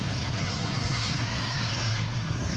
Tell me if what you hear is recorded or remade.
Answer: remade